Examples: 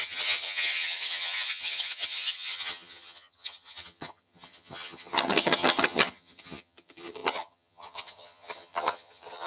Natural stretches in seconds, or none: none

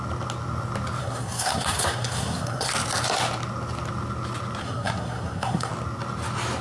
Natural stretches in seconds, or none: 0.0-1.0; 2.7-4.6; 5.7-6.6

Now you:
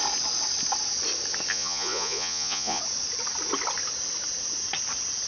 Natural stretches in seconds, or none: 0.0-1.5; 2.8-5.3

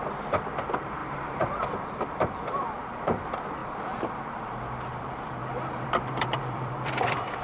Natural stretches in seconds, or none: 1.0-2.2; 3.6-4.1